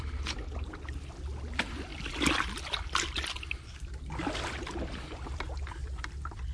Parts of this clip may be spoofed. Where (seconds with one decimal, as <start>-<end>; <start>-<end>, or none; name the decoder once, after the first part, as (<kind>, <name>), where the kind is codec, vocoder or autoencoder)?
none